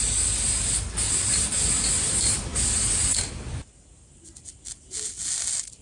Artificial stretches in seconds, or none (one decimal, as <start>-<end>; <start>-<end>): none